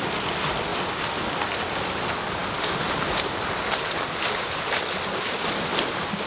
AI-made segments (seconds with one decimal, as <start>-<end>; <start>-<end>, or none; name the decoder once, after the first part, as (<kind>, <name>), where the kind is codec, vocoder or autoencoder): none